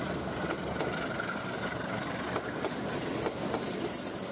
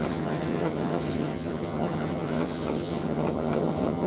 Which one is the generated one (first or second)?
second